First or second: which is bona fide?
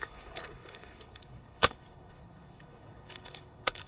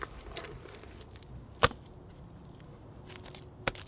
second